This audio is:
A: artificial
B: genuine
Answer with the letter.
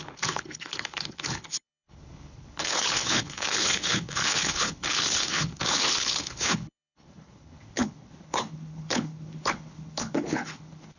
A